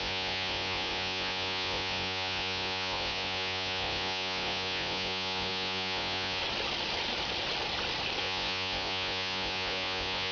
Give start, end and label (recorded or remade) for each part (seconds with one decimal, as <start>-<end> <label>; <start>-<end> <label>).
0.0-6.4 remade; 6.4-8.2 recorded; 8.2-10.3 remade